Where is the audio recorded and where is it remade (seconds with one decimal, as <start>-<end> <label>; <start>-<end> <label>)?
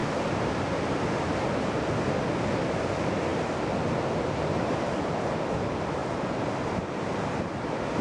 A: 0.0-1.5 remade; 1.5-6.0 recorded; 6.0-7.3 remade; 7.3-8.0 recorded